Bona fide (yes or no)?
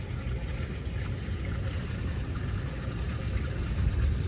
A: yes